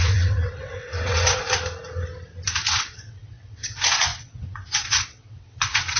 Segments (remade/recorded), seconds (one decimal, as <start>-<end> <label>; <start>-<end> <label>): 0.0-1.4 remade; 1.4-2.7 recorded; 2.7-6.0 remade